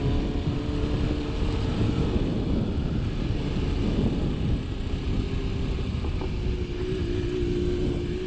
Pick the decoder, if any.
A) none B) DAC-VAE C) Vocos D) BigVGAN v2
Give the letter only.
A